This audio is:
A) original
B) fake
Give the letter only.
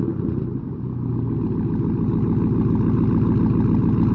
A